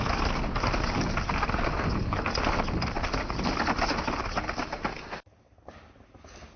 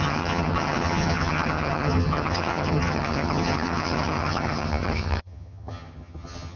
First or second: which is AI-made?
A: second